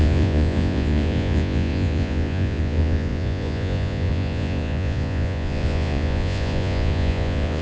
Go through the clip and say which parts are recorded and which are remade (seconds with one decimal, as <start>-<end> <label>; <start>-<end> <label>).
0.0-7.6 remade